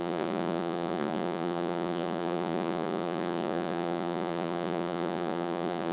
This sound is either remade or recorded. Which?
remade